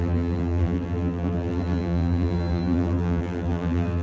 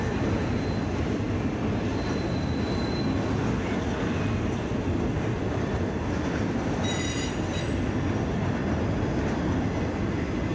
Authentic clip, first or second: second